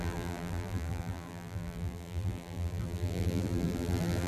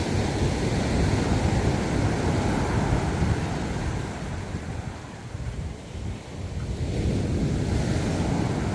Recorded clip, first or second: second